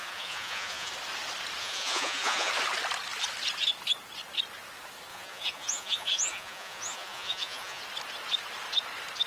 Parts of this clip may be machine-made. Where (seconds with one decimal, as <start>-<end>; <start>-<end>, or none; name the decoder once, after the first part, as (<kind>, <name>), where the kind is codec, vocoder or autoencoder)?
0.0-0.9 (vocoder, Vocos); 1.6-2.5; 5.1-7.8